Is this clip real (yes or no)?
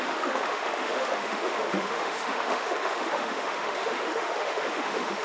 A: no